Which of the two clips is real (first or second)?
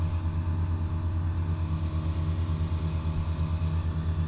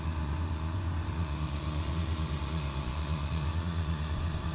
first